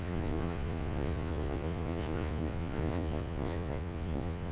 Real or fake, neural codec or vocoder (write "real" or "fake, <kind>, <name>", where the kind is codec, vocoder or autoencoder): fake, vocoder, Vocos